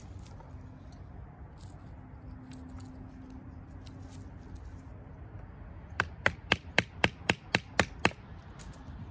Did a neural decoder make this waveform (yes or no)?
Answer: no